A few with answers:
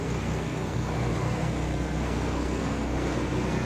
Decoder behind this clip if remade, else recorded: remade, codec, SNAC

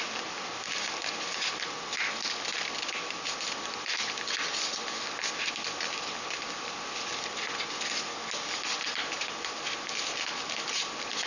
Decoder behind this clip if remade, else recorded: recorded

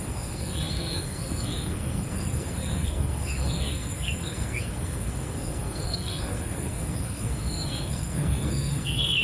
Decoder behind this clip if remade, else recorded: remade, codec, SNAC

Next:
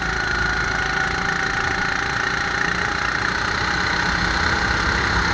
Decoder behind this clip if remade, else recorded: recorded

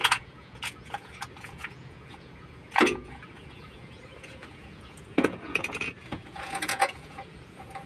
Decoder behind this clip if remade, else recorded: remade, vocoder, Vocos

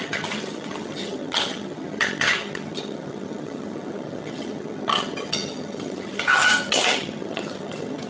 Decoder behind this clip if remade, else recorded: remade, vocoder, HiFi-GAN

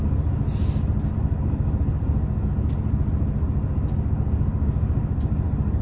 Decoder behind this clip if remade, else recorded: recorded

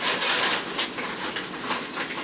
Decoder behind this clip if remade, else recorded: recorded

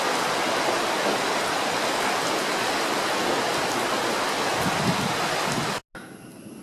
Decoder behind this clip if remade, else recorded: recorded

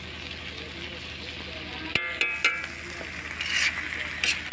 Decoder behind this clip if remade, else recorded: recorded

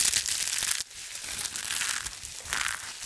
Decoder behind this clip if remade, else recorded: recorded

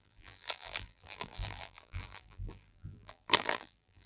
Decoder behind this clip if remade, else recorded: remade, vocoder, BigVGAN v2